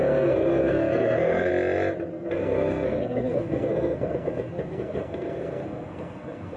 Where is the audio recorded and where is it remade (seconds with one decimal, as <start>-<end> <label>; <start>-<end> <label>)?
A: 0.0-1.5 remade; 1.5-2.1 recorded; 2.1-6.6 remade